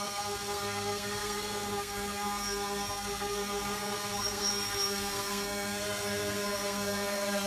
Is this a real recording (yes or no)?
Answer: no